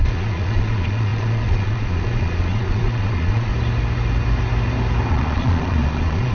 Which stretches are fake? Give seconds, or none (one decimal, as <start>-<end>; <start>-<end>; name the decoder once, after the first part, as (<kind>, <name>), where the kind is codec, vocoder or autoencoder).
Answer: 0.0-3.5 (vocoder, Vocos); 5.1-6.3